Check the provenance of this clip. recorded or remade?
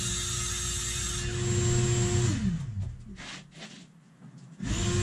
recorded